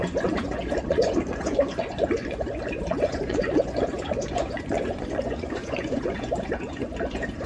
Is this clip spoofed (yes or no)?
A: yes